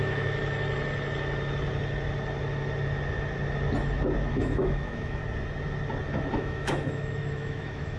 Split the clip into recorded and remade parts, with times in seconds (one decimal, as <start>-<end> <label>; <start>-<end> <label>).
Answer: 0.0-0.4 remade; 0.4-4.3 recorded; 4.3-5.2 remade; 5.2-6.3 recorded; 6.3-8.0 remade